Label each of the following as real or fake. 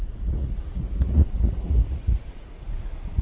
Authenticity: fake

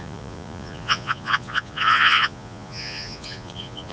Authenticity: fake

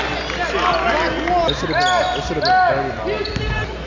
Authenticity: real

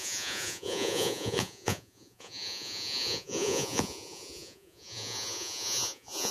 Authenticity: fake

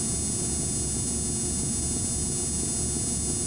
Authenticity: real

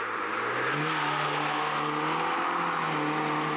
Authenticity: real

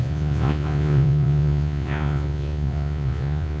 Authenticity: fake